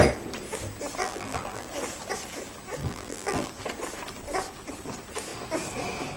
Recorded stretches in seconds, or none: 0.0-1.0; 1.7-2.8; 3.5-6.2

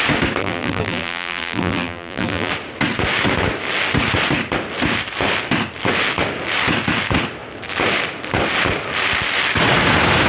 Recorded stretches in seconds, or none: 0.0-0.4; 2.5-10.3

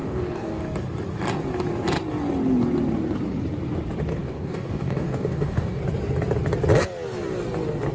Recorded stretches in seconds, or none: 0.6-4.1; 5.8-7.9

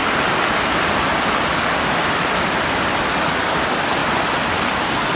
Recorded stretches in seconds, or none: 0.0-3.0; 4.0-4.6

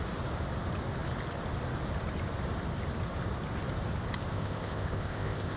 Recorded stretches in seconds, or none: 0.0-4.3